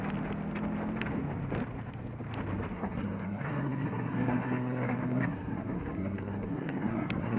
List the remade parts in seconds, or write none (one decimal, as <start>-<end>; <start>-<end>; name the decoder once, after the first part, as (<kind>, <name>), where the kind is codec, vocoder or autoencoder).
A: 2.7-7.4 (codec, SNAC)